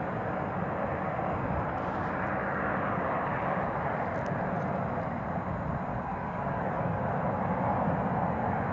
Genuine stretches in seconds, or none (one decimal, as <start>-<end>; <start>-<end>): 0.0-2.4; 3.2-5.9; 7.0-8.7